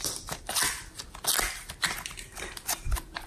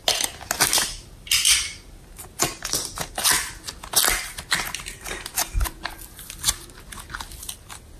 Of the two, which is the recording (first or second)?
second